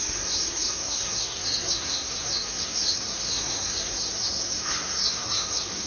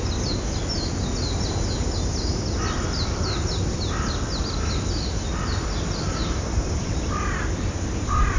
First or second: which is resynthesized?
first